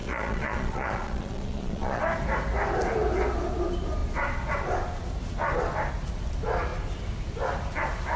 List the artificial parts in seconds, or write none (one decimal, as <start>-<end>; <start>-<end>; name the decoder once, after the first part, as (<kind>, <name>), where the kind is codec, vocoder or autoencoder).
0.0-2.0 (vocoder, Vocos)